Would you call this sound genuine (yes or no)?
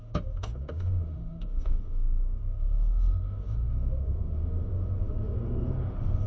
no